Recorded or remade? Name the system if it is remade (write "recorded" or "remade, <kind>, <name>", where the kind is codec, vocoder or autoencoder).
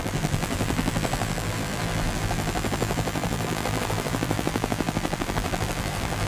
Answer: remade, vocoder, BigVGAN v2